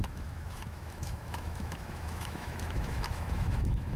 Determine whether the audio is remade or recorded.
remade